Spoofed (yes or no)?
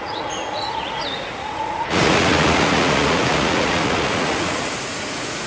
yes